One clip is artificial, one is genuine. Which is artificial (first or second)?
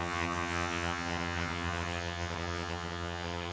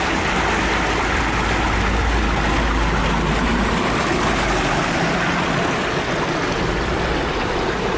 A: first